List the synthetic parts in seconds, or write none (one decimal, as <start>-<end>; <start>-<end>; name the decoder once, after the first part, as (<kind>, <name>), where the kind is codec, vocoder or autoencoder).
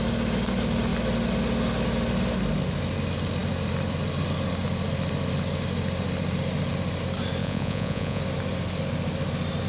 7.4-8.2 (vocoder, Vocos)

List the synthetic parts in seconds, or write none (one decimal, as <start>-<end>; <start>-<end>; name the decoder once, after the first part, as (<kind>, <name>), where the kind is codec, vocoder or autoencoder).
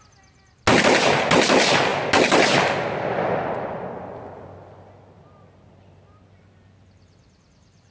none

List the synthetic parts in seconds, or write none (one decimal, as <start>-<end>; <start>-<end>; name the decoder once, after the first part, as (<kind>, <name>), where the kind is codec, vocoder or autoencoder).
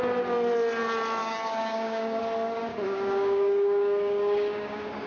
1.2-2.2 (codec, DAC); 2.7-5.1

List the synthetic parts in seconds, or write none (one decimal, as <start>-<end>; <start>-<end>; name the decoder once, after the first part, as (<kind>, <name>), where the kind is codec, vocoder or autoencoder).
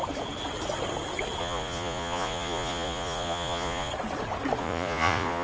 1.4-3.9 (vocoder, Vocos); 4.6-5.4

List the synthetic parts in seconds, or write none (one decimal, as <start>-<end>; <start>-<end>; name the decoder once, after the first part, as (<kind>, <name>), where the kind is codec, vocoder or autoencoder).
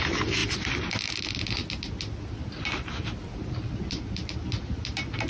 none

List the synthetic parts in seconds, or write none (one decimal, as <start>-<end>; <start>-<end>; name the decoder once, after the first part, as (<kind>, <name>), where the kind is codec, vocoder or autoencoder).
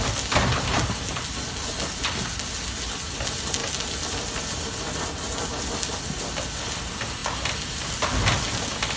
none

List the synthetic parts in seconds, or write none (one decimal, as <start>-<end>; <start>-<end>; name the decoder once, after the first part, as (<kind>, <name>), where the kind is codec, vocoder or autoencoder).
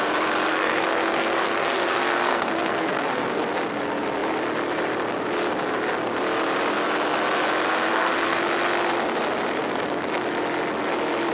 0.5-3.4 (codec, SNAC); 7.9-8.4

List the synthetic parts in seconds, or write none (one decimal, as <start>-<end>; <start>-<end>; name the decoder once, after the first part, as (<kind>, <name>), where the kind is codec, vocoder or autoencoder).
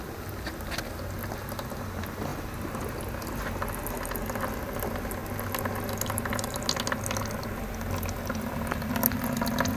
none